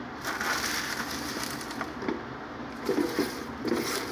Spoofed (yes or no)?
no